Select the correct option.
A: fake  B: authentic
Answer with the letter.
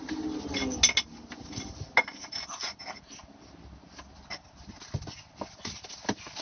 B